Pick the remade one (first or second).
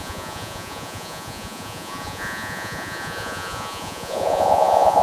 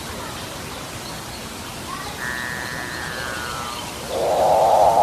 first